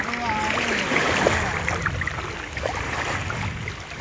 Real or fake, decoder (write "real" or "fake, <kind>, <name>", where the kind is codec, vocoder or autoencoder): real